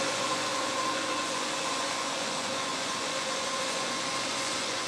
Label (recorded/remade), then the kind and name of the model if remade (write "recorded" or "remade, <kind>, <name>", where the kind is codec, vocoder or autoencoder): remade, vocoder, Vocos